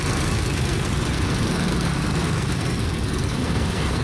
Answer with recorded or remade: remade